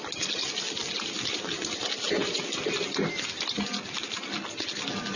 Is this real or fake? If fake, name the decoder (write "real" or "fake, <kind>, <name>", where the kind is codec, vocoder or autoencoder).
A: real